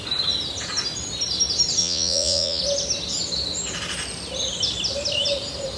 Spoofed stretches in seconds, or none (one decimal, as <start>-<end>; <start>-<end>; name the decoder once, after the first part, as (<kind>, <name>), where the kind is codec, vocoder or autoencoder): 1.8-2.6 (vocoder, Vocos)